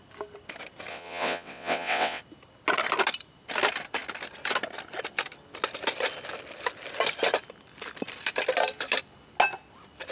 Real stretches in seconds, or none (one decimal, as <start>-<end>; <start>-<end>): 0.0-0.9; 2.2-10.1